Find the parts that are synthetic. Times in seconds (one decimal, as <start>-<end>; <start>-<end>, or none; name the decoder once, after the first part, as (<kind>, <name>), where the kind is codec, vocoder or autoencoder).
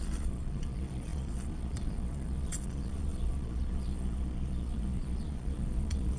0.0-6.2 (vocoder, Vocos)